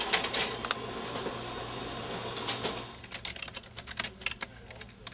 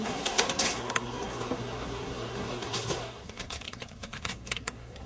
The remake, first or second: second